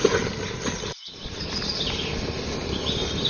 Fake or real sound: real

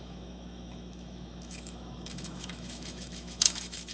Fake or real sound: fake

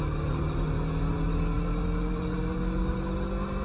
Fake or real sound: real